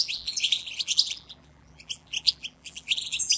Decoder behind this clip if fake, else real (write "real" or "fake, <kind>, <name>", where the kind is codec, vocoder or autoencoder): fake, vocoder, BigVGAN v2